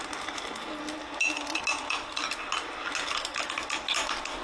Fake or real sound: real